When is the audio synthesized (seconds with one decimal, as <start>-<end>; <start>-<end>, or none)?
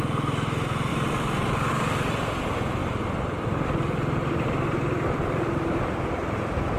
0.9-1.7; 2.8-6.8